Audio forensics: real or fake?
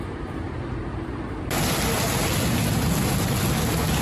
real